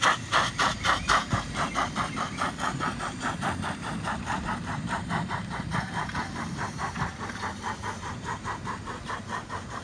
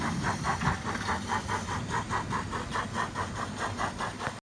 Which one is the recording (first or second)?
second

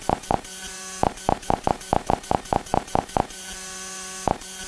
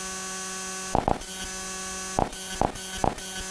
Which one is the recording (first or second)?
second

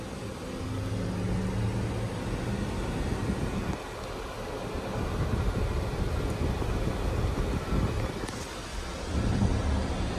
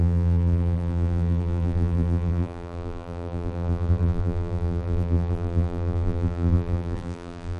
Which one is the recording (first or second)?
first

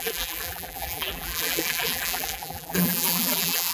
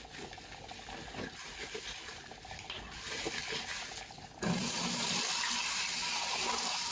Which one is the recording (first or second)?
second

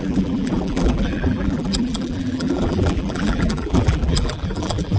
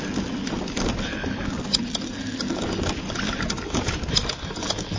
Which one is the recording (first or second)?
second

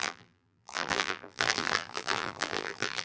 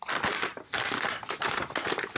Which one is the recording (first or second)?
second